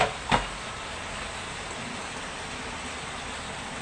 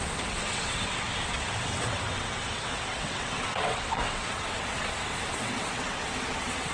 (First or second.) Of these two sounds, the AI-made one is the second